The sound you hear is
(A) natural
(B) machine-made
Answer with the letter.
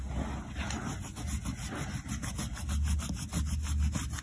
A